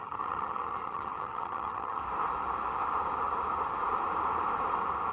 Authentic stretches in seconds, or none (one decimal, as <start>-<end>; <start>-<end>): 2.0-5.1